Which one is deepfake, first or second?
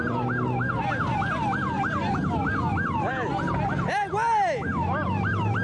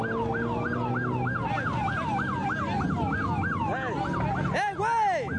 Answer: first